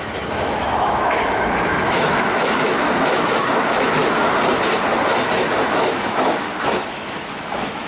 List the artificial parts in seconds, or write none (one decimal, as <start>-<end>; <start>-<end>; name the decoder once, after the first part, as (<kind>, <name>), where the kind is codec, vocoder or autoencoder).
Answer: 0.0-4.0 (autoencoder, DAC-VAE); 5.6-7.9